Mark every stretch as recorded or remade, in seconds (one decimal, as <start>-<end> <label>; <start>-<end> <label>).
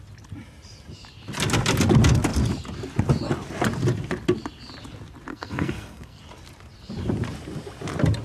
0.0-5.3 recorded; 5.3-6.2 remade; 6.2-8.2 recorded